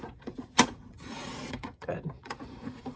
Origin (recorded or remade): remade